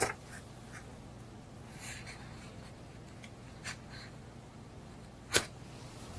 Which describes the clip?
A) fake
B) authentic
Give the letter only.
B